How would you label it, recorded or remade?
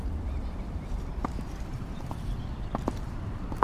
remade